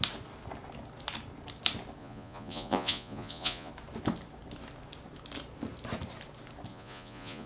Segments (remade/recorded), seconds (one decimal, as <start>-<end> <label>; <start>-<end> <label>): 0.0-2.0 recorded; 2.0-3.7 remade; 3.7-6.7 recorded; 6.7-7.5 remade